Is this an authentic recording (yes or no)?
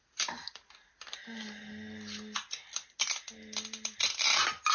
yes